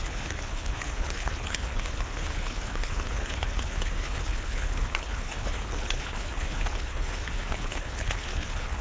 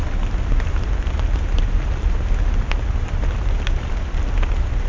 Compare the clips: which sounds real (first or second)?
second